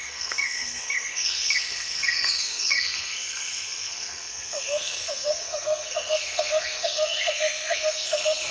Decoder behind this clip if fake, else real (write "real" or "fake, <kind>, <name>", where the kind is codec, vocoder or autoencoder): fake, codec, SNAC